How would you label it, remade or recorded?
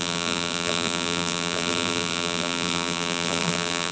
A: remade